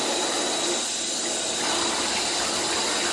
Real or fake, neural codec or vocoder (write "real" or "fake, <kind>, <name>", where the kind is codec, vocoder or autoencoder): real